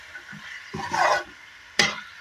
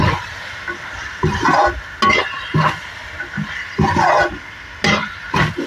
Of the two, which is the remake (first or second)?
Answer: first